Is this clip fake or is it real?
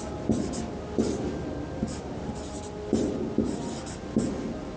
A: real